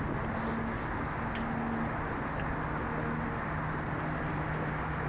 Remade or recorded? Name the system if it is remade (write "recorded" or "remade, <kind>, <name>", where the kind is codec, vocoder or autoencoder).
recorded